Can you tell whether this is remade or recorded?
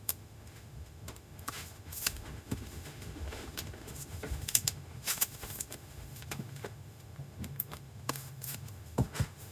remade